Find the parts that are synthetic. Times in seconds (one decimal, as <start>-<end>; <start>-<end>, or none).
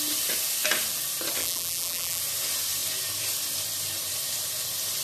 1.4-2.2